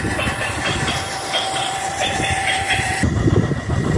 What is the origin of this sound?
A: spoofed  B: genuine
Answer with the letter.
A